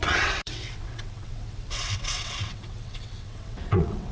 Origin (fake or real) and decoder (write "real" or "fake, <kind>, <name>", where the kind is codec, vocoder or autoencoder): fake, vocoder, WaveNeXt